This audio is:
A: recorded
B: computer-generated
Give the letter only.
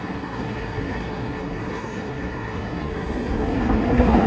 B